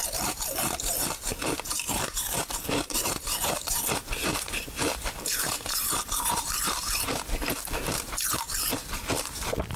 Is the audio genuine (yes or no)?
no